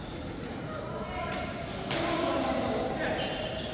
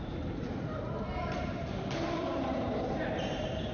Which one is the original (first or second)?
first